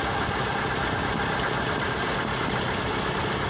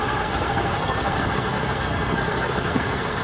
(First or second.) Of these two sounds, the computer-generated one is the second